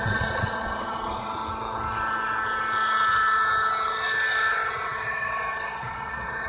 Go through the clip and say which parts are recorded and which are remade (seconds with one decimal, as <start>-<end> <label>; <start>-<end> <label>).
0.0-1.4 remade; 1.4-4.5 recorded; 4.5-6.5 remade